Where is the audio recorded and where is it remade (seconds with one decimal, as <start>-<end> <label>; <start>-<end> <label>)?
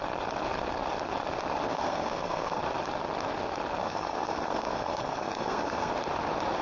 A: 0.0-1.7 recorded; 1.7-2.6 remade; 2.6-3.8 recorded; 3.8-5.9 remade; 5.9-6.6 recorded